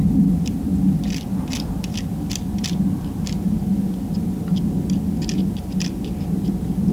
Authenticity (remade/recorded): recorded